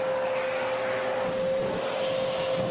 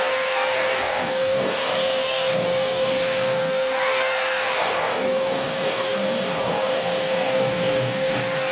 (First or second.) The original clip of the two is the first